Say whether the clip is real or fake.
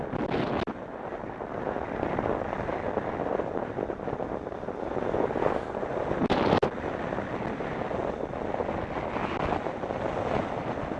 real